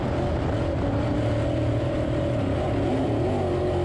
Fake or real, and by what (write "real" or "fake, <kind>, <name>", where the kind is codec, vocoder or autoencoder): real